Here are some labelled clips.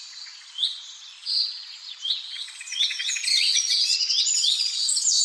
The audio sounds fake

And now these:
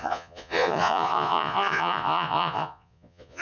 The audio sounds fake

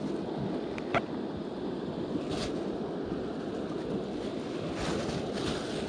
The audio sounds real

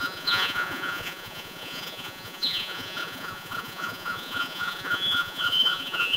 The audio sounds fake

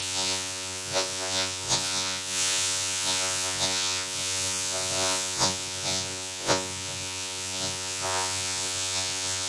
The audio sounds fake